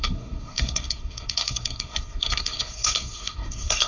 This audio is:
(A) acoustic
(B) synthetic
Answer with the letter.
B